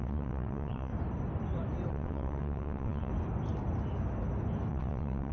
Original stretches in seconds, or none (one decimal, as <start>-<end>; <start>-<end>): 0.9-1.9; 3.1-4.7